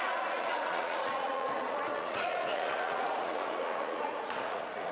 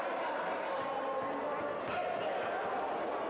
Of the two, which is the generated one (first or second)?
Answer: first